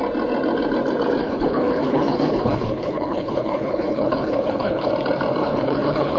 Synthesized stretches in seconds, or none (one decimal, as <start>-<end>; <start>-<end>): 1.2-4.9; 5.4-6.2